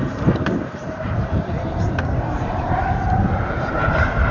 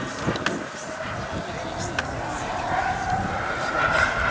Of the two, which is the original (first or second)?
second